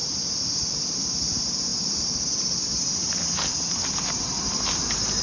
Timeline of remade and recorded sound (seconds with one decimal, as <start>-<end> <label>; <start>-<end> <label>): 0.0-0.7 recorded; 0.7-1.7 remade; 1.7-3.0 recorded; 3.0-5.2 remade